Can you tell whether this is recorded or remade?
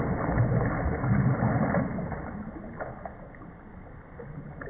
recorded